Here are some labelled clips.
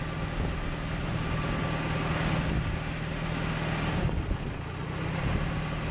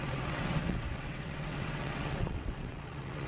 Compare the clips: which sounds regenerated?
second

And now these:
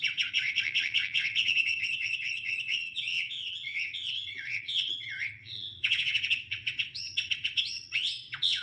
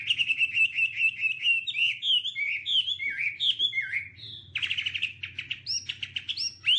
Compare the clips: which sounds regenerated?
first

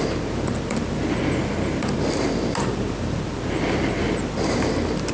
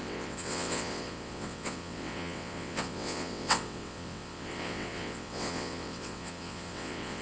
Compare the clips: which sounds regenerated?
second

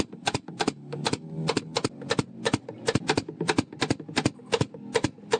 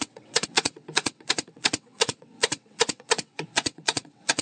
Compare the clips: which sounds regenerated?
second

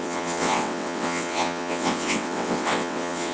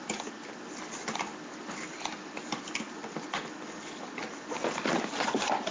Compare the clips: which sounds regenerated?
first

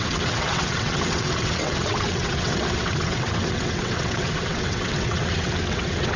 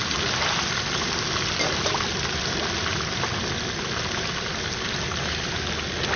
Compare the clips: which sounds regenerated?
first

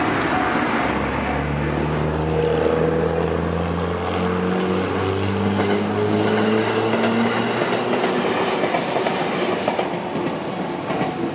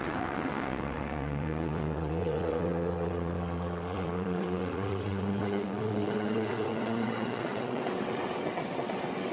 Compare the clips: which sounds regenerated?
second